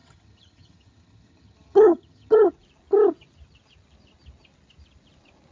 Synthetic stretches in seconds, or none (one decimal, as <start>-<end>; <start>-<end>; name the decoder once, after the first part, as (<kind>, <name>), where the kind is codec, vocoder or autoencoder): 0.0-2.5 (vocoder, HiFi-GAN)